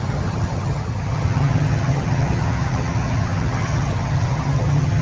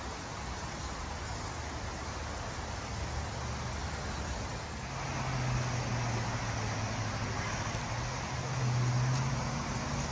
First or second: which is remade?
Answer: first